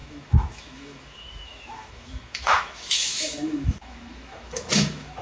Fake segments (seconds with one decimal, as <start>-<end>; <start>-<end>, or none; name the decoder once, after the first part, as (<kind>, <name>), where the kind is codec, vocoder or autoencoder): 0.0-5.2 (autoencoder, DAC-VAE)